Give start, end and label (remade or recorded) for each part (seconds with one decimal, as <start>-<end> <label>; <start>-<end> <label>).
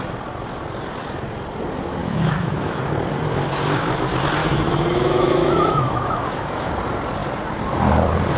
0.0-2.0 recorded; 2.0-2.8 remade; 2.8-4.4 recorded; 4.4-6.7 remade; 6.7-8.4 recorded